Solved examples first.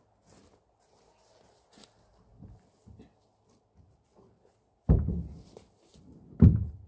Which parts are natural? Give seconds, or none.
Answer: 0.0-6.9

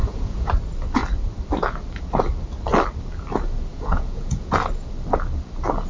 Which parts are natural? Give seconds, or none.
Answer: 0.5-3.7; 4.5-5.9

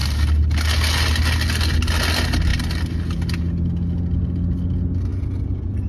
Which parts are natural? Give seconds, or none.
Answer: 0.0-5.1

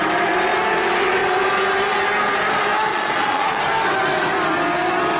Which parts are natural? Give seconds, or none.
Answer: 0.0-2.9; 3.6-5.2

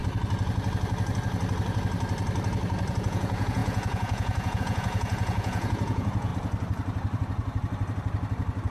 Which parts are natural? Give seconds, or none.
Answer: 0.0-2.9; 6.3-8.7

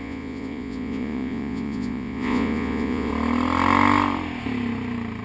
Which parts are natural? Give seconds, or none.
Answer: 3.1-5.2

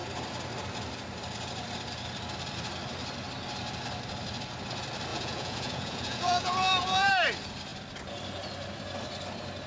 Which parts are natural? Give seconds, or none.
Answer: 0.0-5.1; 7.1-9.7